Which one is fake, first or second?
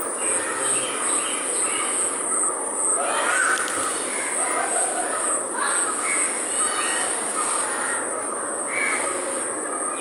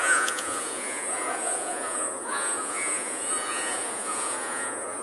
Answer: second